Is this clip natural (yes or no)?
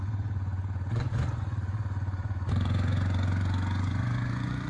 no